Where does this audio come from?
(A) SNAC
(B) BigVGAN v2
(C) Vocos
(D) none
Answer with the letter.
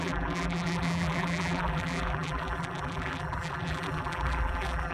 B